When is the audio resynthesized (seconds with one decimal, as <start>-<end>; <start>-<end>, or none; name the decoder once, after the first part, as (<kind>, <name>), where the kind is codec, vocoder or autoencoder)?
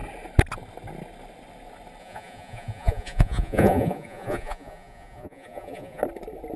2.0-6.0 (vocoder, Vocos)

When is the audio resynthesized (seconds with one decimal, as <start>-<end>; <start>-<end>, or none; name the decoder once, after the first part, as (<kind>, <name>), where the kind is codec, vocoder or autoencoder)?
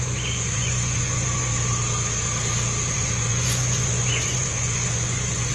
0.0-1.5 (vocoder, Vocos); 2.9-5.5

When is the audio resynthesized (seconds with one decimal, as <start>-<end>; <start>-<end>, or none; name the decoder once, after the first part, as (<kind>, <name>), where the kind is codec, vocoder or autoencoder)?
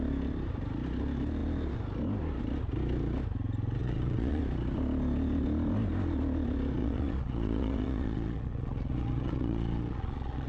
3.8-4.4 (vocoder, Vocos); 6.8-10.5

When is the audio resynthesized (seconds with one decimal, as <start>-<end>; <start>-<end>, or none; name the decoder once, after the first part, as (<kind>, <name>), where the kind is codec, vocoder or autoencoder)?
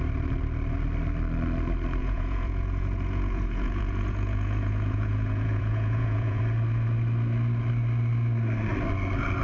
2.0-6.4 (vocoder, Vocos)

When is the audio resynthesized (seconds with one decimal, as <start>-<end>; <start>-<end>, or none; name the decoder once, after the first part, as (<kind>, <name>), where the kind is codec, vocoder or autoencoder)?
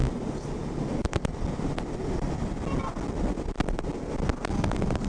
none